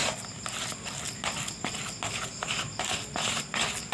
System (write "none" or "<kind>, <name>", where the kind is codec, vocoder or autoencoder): none